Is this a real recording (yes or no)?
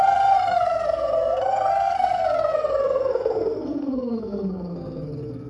no